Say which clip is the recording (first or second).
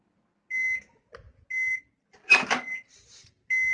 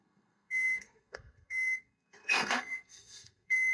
first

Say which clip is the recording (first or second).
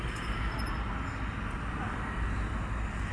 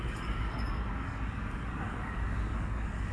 first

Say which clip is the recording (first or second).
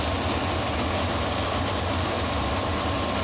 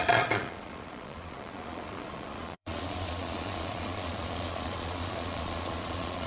first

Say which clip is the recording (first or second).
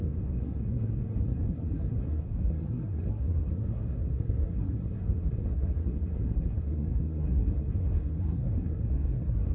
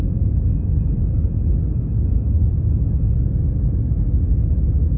second